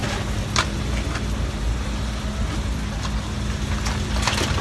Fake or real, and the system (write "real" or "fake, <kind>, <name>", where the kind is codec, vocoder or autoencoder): real